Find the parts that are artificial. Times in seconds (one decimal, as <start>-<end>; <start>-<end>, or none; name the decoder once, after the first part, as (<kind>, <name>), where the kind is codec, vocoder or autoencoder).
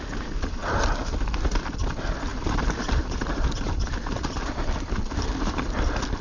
2.3-5.6 (vocoder, BigVGAN v2)